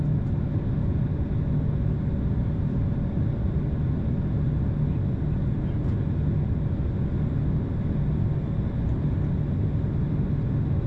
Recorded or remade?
recorded